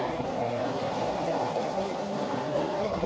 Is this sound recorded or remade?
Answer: remade